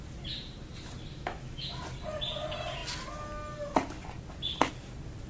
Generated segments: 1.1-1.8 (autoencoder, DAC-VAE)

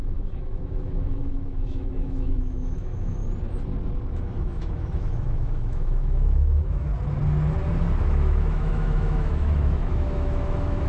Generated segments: 0.0-3.2 (autoencoder, DAC-VAE); 4.1-6.9; 8.0-10.9

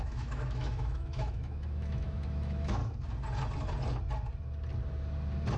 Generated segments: 0.0-2.8 (autoencoder, DAC-VAE)

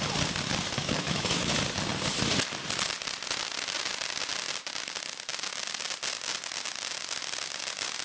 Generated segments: 0.8-1.5 (autoencoder, DAC-VAE)

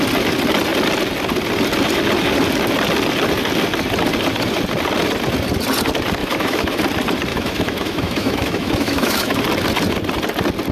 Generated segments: 6.2-6.8 (autoencoder, DAC-VAE); 7.3-9.4

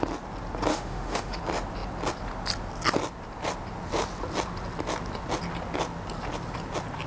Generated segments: 0.7-1.4 (autoencoder, DAC-VAE)